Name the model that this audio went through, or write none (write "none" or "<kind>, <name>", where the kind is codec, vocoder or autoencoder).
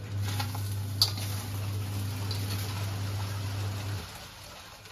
none